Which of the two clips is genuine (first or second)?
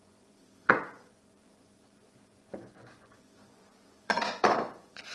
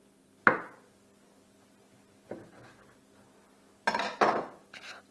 second